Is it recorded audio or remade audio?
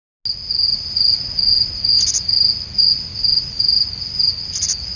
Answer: recorded